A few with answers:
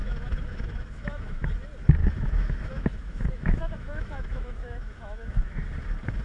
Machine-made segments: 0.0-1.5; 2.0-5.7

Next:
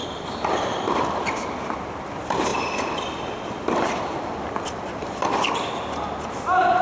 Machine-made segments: 0.0-1.8

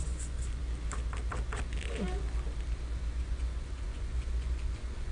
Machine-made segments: 0.0-0.6; 3.2-5.1

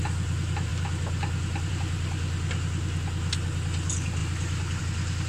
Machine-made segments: none

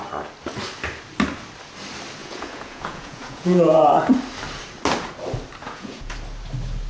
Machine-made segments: 2.2-3.9; 5.6-6.1

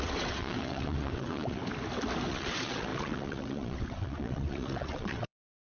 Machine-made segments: 0.0-1.6; 2.3-5.7